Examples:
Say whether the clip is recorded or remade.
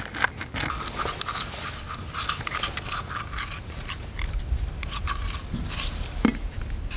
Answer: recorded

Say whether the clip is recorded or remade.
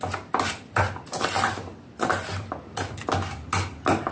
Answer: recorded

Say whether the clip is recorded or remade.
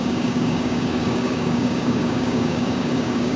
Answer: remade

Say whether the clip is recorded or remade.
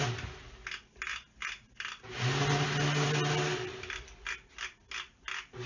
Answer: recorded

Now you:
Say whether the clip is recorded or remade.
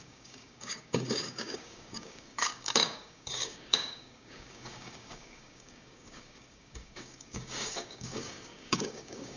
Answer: remade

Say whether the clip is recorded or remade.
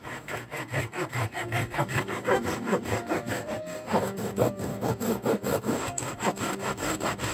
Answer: remade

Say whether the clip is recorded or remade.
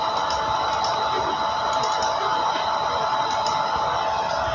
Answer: recorded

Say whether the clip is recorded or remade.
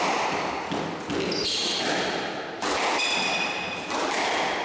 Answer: recorded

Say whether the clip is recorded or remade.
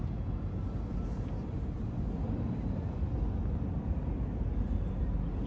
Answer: recorded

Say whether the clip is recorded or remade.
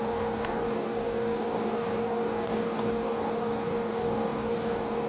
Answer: remade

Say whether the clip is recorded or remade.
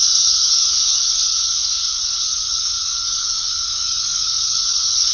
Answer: remade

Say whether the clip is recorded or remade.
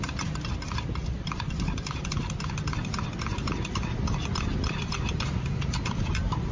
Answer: recorded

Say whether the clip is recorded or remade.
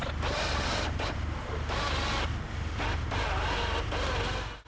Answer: recorded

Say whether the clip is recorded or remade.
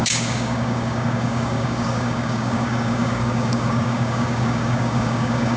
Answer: remade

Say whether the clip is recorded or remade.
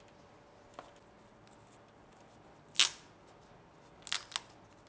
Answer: recorded